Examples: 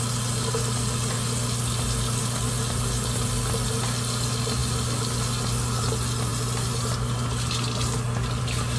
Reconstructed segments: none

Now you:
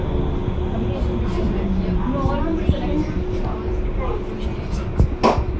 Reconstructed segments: none

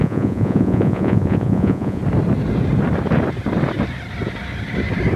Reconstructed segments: 0.0-2.0 (vocoder, Vocos)

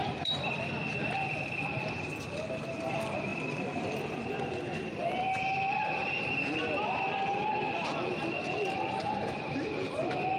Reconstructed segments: 0.0-1.4 (vocoder, BigVGAN v2); 3.3-4.5; 7.4-9.0

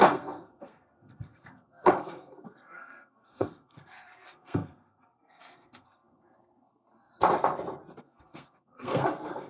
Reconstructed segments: 0.0-7.1 (codec, SNAC); 8.0-9.5